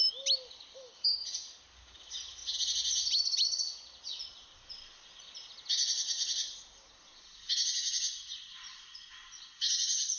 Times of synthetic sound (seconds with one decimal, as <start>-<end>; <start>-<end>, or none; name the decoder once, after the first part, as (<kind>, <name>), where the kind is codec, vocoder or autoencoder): none